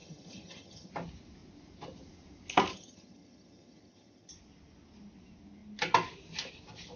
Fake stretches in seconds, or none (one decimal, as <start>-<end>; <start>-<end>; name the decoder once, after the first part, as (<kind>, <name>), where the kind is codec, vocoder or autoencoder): 0.0-0.9 (vocoder, HiFi-GAN); 2.7-4.3